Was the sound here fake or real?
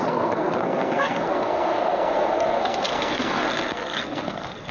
fake